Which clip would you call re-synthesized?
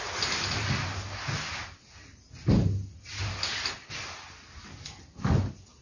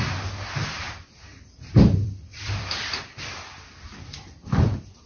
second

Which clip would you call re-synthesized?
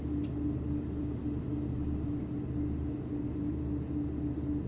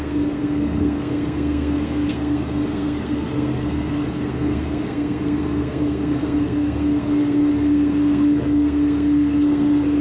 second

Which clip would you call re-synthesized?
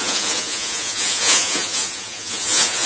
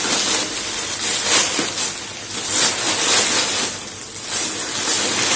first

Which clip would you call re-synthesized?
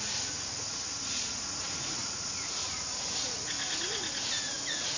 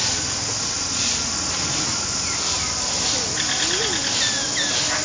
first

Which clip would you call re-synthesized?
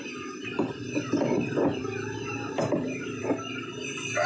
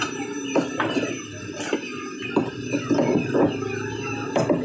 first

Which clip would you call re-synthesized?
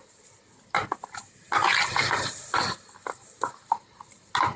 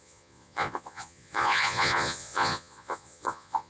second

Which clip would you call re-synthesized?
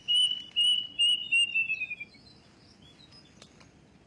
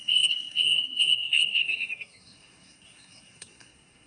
second